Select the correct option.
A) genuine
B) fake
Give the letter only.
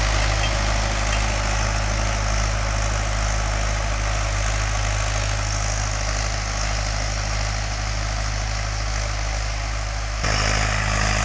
A